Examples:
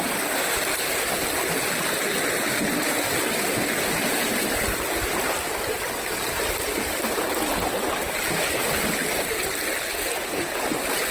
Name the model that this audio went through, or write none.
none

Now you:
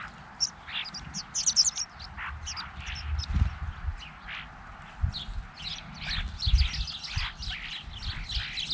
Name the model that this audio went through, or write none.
none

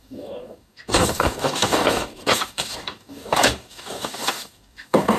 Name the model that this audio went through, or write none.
codec, DAC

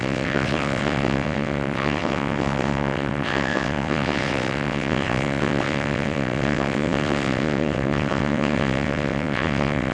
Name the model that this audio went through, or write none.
vocoder, WaveNeXt